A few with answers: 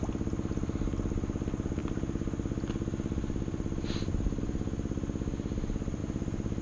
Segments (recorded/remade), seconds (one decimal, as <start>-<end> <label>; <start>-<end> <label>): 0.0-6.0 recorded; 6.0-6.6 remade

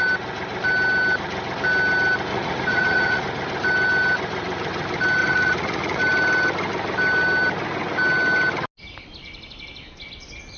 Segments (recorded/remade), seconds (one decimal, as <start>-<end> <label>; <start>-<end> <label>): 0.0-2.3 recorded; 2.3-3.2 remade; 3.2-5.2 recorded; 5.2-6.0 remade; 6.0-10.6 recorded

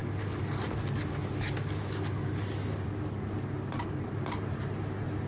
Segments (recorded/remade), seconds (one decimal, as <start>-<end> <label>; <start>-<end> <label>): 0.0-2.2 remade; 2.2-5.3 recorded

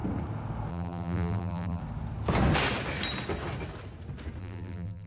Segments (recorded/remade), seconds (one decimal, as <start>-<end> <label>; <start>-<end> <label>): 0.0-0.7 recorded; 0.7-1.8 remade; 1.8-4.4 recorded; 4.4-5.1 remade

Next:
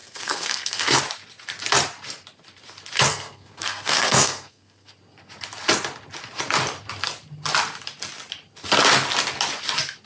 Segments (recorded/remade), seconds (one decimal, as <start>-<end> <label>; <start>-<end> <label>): 0.0-1.0 remade; 1.0-3.1 recorded; 3.1-4.9 remade; 4.9-10.1 recorded

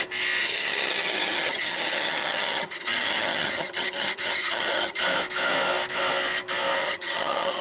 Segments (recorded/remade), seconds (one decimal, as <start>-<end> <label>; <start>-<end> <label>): 0.0-0.4 recorded; 0.4-5.0 remade; 5.0-6.8 recorded; 6.8-7.6 remade

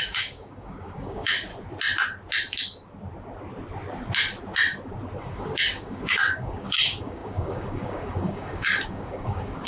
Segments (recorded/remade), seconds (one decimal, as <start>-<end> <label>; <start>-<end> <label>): 0.0-1.5 remade; 1.5-5.2 recorded; 5.2-9.7 remade